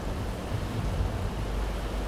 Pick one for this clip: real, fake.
real